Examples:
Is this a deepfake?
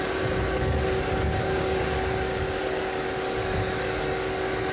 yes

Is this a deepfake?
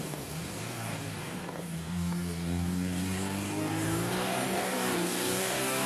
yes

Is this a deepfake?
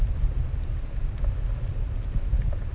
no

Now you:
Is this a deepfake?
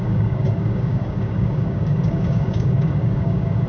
yes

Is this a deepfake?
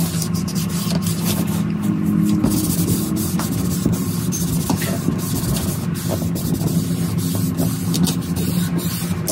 no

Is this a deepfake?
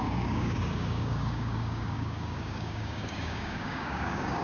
yes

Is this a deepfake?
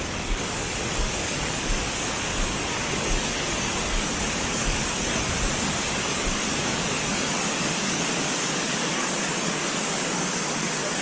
yes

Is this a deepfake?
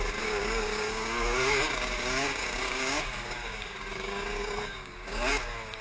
yes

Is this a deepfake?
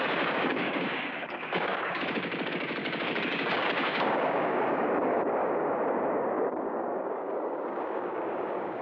yes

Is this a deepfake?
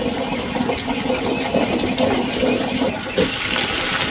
no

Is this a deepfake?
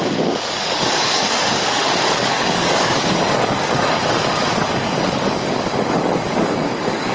yes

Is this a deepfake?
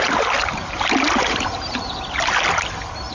no